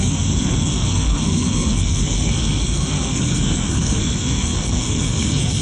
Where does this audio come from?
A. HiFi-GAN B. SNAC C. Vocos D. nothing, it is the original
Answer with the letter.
B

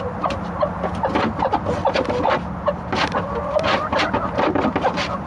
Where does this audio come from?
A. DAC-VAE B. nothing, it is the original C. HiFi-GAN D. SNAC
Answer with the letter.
B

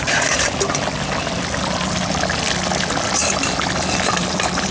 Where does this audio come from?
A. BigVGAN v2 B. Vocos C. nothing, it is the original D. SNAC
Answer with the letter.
C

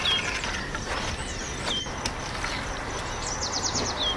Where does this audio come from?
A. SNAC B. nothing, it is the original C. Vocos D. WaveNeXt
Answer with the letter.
B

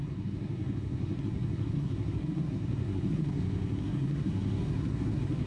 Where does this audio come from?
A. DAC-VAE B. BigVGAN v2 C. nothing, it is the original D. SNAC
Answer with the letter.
D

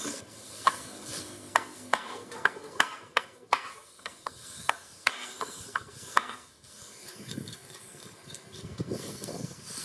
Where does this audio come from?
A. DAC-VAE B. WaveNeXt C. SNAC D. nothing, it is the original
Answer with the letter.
C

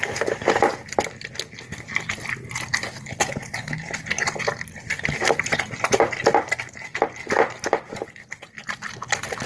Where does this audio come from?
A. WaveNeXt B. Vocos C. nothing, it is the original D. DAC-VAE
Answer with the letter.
C